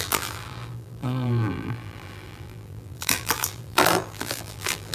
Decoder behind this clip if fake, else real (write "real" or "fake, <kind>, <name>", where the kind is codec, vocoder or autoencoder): fake, vocoder, BigVGAN v2